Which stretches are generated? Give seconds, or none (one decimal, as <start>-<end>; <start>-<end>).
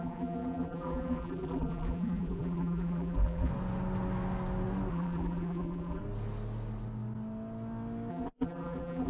0.0-3.5; 4.9-6.0; 8.1-9.1